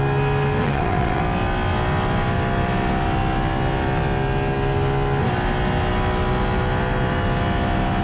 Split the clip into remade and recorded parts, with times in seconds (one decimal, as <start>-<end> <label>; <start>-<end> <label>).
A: 0.0-0.6 recorded; 0.6-1.2 remade; 1.2-8.0 recorded